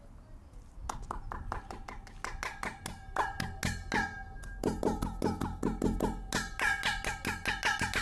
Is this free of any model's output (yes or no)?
yes